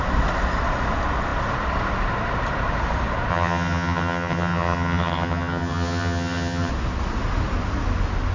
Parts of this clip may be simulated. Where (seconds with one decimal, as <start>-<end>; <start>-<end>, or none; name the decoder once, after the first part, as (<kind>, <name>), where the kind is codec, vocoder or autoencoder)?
3.3-6.7 (vocoder, HiFi-GAN)